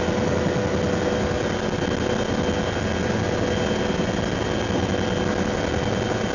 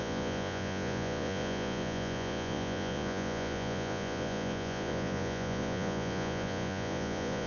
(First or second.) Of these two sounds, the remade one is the second